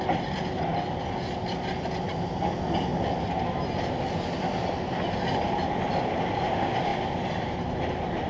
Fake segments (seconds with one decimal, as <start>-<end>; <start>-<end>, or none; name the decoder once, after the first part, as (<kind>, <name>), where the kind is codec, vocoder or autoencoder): none